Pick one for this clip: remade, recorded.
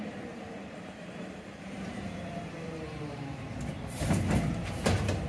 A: remade